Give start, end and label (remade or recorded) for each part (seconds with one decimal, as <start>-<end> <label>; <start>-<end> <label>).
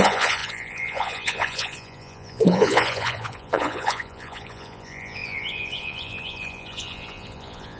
0.0-7.8 remade